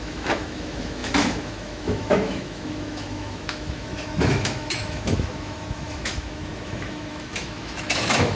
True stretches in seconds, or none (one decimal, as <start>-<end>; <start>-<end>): none